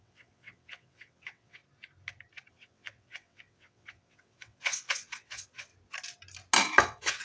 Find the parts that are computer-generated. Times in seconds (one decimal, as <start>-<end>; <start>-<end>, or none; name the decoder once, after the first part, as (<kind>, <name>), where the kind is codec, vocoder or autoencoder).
0.0-1.6 (vocoder, WaveNeXt); 2.5-5.7; 6.8-7.2